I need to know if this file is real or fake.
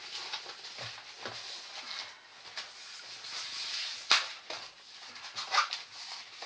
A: real